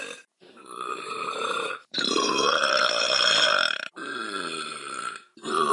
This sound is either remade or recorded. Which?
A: remade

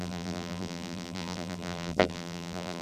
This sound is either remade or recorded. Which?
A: remade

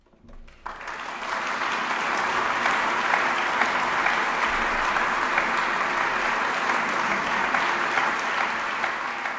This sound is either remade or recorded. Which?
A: recorded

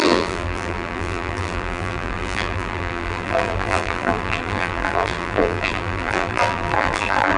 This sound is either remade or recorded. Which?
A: remade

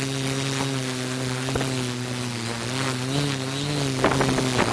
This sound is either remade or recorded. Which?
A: recorded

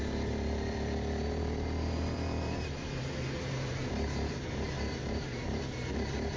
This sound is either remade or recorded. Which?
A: remade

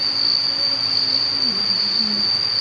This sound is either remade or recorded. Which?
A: recorded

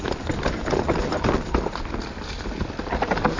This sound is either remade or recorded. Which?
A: recorded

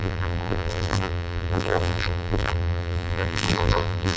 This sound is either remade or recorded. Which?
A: remade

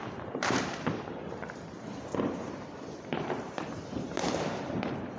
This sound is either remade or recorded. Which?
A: remade